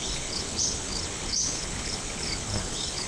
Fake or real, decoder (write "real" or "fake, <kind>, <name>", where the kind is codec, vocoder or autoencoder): fake, codec, HILCodec